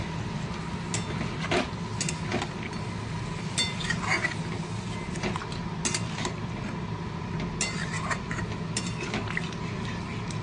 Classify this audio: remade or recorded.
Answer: recorded